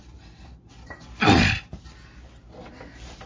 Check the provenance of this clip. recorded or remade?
recorded